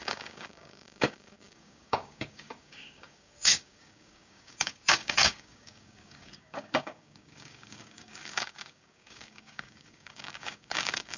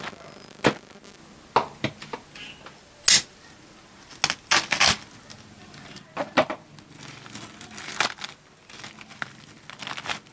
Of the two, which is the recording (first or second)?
second